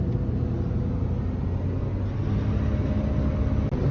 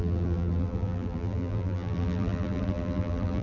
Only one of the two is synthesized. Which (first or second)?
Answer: second